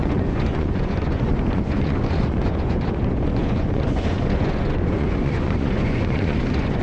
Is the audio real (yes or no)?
no